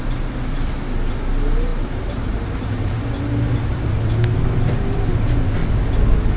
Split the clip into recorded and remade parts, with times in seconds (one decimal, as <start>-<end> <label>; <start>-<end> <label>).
0.0-1.7 recorded; 1.7-3.2 remade; 3.2-6.4 recorded